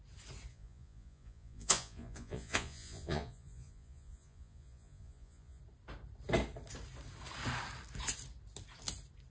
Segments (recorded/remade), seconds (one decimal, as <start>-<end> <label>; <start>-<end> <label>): 0.0-0.5 recorded; 0.5-5.6 remade; 5.6-9.3 recorded

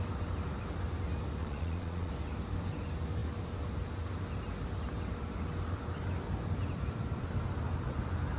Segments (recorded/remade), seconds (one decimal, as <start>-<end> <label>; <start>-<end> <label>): 0.0-1.4 recorded; 1.4-2.1 remade; 2.1-8.4 recorded

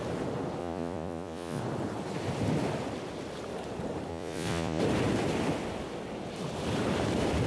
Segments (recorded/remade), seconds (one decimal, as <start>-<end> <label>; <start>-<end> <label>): 0.0-0.6 recorded; 0.6-1.6 remade; 1.6-4.1 recorded; 4.1-4.8 remade; 4.8-7.5 recorded

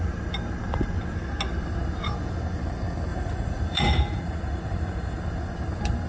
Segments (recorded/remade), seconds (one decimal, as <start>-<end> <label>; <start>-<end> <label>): 0.0-3.1 recorded; 3.1-5.2 remade; 5.2-6.1 recorded

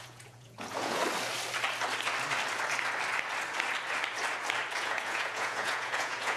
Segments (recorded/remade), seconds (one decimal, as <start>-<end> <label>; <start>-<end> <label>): 0.0-1.0 remade; 1.0-4.8 recorded; 4.8-6.4 remade

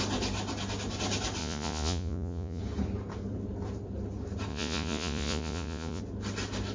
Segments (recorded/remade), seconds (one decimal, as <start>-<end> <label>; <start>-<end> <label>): 0.0-1.4 recorded; 1.4-2.6 remade; 2.6-4.5 recorded; 4.5-6.0 remade; 6.0-6.7 recorded

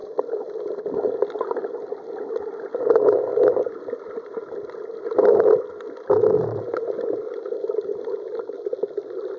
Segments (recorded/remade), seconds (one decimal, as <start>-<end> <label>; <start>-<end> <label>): 0.0-9.4 recorded